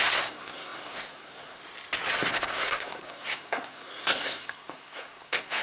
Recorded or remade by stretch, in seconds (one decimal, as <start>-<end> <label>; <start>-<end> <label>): 0.0-1.6 remade; 1.6-2.3 recorded; 2.3-5.6 remade